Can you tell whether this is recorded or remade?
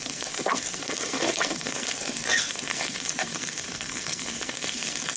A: remade